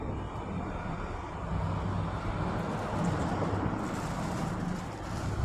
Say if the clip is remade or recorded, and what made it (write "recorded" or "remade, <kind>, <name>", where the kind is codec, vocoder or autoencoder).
recorded